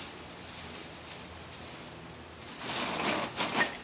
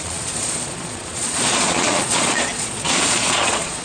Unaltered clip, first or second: first